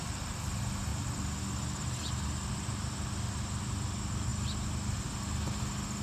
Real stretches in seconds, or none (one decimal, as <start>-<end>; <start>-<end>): 0.0-6.0